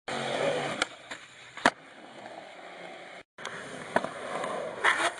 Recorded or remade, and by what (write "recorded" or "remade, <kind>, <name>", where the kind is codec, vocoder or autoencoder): recorded